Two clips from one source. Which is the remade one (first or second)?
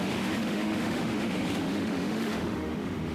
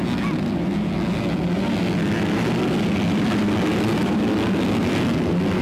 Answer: first